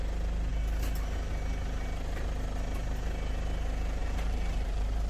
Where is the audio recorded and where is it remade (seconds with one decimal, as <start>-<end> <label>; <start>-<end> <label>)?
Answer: 0.0-4.0 recorded; 4.0-5.1 remade